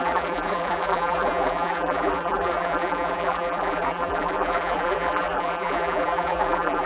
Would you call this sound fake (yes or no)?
yes